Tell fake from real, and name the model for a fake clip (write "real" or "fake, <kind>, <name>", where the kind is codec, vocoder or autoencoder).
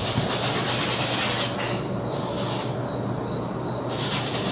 real